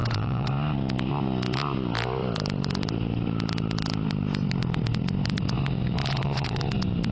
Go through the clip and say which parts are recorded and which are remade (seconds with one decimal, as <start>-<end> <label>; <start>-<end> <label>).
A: 0.0-0.5 remade; 0.5-6.1 recorded; 6.1-6.6 remade; 6.6-7.1 recorded